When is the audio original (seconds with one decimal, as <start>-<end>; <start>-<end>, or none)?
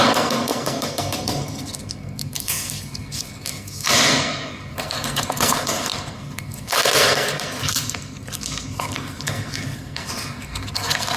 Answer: none